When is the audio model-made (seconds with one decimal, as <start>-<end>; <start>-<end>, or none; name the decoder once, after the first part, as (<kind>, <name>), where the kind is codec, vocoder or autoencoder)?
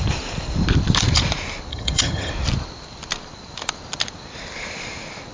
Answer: 1.7-2.3 (vocoder, HiFi-GAN)